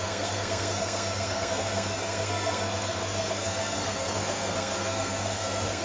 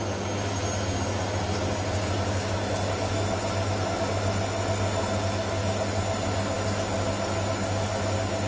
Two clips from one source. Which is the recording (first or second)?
second